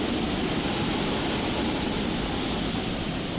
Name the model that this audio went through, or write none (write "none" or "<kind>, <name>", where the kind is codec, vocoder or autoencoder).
vocoder, BigVGAN v2